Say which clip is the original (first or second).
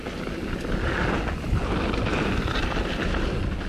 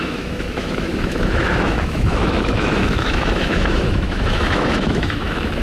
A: first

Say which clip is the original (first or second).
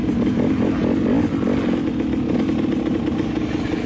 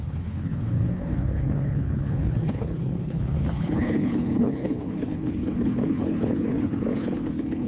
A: first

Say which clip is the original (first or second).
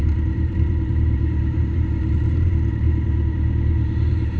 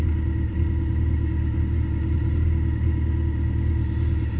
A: second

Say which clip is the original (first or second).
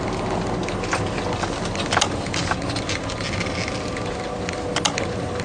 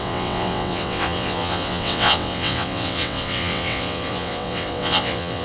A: first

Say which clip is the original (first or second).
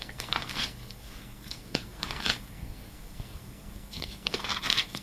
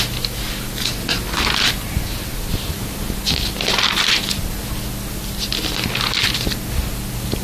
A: second